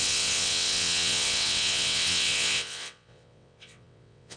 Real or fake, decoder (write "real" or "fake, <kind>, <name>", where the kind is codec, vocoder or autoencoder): fake, vocoder, WaveNeXt